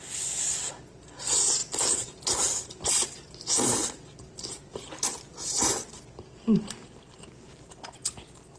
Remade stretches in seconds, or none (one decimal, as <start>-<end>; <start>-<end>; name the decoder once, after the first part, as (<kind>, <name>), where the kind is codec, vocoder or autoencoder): none